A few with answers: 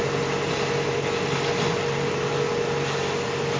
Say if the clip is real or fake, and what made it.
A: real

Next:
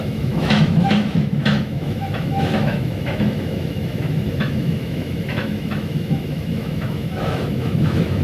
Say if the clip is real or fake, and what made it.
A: fake, autoencoder, DAC-VAE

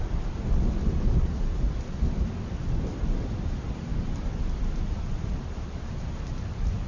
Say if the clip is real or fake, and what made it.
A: real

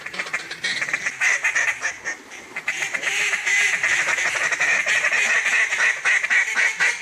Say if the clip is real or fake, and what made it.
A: real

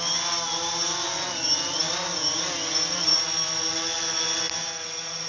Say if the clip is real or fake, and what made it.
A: real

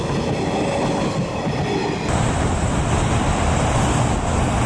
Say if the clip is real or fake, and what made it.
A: real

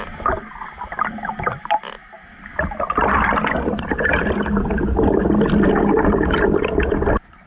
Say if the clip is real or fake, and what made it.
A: real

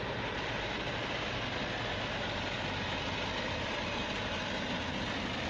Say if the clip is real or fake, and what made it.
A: real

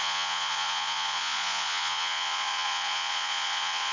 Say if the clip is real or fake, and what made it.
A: fake, vocoder, Vocos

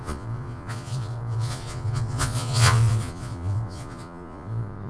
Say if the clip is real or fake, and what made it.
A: fake, vocoder, Vocos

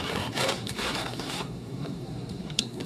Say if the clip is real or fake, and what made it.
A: fake, codec, SNAC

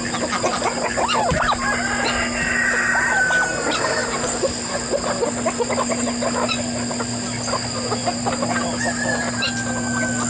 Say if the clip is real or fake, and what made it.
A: real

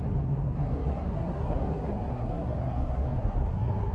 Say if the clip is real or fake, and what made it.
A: fake, codec, SNAC